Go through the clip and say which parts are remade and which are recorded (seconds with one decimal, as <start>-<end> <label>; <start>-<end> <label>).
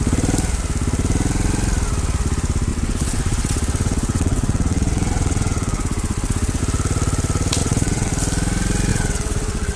0.0-2.7 recorded; 2.7-6.6 remade; 6.6-7.6 recorded; 7.6-8.1 remade; 8.1-8.9 recorded; 8.9-9.8 remade